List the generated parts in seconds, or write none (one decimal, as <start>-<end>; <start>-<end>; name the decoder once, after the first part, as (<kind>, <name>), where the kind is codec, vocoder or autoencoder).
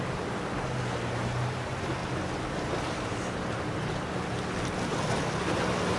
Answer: none